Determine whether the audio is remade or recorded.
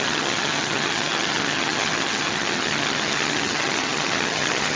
remade